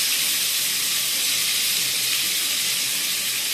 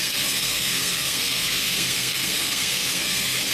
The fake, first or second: second